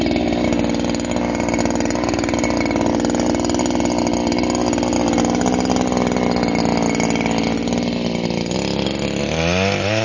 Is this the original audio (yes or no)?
yes